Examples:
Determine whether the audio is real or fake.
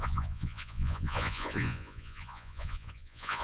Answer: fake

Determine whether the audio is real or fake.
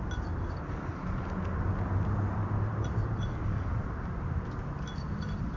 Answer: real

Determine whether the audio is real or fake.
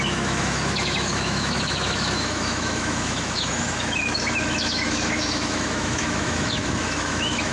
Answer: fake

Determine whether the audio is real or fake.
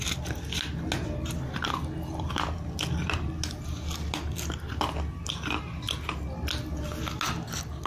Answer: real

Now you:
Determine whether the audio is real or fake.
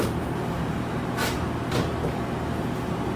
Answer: real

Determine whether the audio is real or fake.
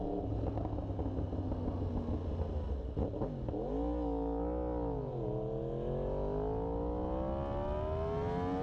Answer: real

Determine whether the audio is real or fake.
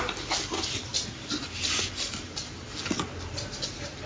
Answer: real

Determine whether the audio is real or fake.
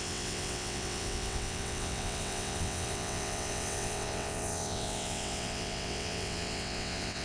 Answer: fake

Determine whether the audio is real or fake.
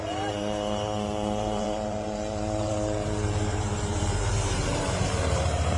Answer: fake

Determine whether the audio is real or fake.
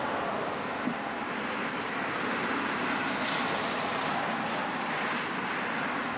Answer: real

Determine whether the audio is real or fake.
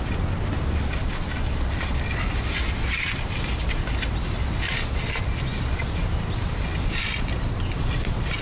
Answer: real